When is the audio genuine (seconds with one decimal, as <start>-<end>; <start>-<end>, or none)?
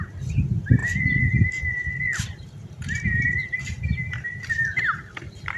0.0-5.6